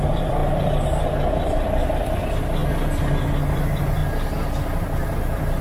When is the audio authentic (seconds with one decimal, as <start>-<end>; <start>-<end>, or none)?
2.6-3.3; 4.0-4.8